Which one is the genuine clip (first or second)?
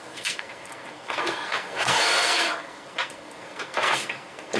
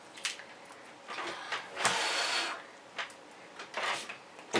second